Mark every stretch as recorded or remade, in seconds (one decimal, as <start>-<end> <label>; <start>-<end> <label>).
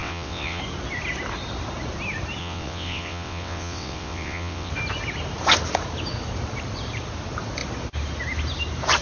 0.0-0.6 remade; 0.6-2.4 recorded; 2.4-4.7 remade; 4.7-9.0 recorded